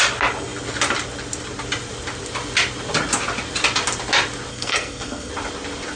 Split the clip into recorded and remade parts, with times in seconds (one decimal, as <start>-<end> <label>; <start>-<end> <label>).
0.0-4.5 recorded; 4.5-5.3 remade; 5.3-6.0 recorded